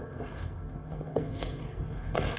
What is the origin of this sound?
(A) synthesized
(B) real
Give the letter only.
A